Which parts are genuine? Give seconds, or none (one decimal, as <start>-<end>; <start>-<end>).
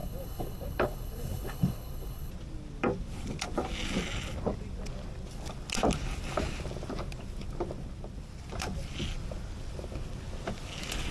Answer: 2.3-11.1